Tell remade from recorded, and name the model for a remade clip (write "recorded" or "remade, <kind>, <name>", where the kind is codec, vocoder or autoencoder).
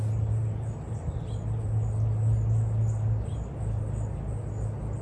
recorded